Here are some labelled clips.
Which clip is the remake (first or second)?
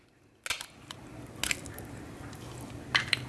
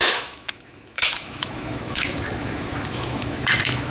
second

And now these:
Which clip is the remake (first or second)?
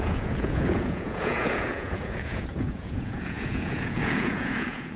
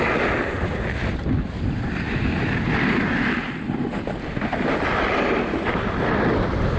first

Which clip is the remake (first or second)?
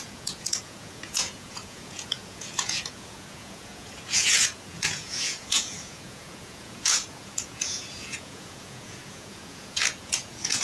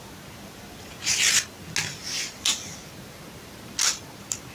first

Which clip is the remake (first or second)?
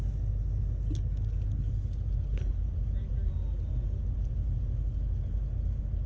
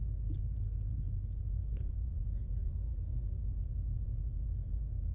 second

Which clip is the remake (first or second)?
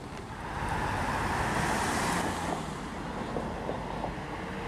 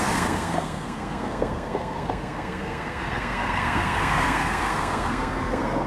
second